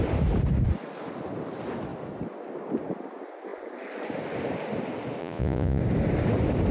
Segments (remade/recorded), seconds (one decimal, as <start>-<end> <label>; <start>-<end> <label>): 0.0-5.2 recorded; 5.2-5.8 remade; 5.8-6.7 recorded